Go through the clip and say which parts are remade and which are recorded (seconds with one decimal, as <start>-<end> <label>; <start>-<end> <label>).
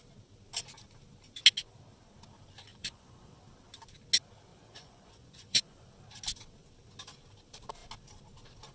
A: 0.0-2.7 recorded; 2.7-3.4 remade; 3.4-4.5 recorded; 4.5-5.9 remade; 5.9-8.7 recorded